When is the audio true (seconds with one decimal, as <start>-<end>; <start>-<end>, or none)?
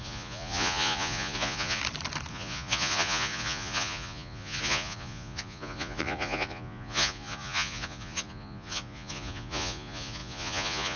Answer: 1.8-2.3